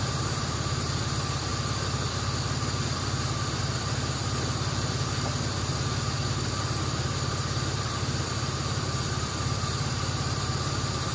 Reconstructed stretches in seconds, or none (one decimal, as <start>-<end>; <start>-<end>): 0.0-1.5; 3.6-4.2; 6.0-11.1